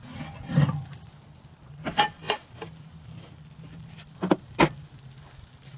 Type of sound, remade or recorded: recorded